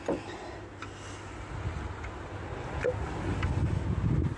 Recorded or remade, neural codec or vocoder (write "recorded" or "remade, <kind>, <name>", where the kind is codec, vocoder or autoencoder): recorded